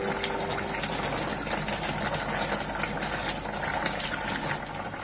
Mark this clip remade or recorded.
recorded